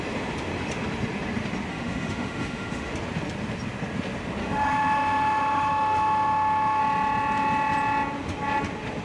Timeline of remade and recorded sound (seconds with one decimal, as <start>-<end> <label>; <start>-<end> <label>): 0.0-1.7 recorded; 1.7-2.9 remade; 2.9-4.4 recorded; 4.4-6.8 remade; 6.8-9.0 recorded